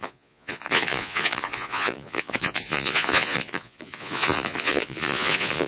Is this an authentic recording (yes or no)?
no